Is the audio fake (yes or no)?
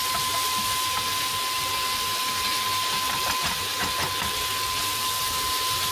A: no